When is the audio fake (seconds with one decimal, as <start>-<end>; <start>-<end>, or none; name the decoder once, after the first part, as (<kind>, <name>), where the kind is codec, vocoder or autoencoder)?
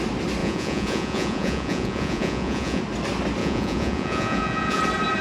0.4-2.8 (vocoder, Vocos); 3.4-4.8